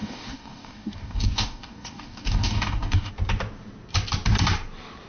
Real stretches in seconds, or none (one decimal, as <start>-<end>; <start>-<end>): 3.1-5.1

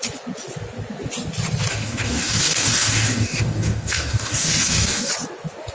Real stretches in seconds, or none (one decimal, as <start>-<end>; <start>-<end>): 0.0-1.7; 5.1-5.7

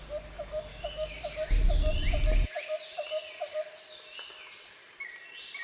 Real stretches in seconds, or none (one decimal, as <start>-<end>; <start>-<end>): 0.0-0.7; 1.2-5.6

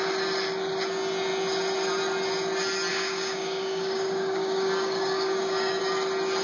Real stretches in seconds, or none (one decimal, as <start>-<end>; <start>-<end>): 0.0-2.9; 5.8-6.4

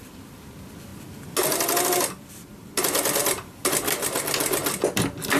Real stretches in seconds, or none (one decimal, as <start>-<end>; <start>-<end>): 0.0-5.4

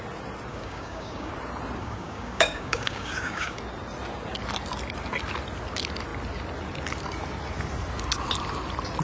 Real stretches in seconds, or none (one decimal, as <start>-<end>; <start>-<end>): 0.0-0.5; 1.3-1.8; 3.6-9.0

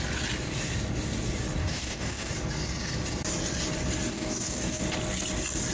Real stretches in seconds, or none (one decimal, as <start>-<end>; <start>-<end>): 0.0-1.6; 2.3-4.1; 4.8-5.7